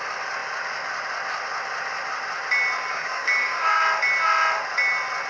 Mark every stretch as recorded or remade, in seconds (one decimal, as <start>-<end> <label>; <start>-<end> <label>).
0.0-2.9 recorded; 2.9-3.8 remade; 3.8-5.3 recorded